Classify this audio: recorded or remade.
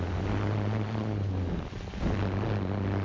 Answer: recorded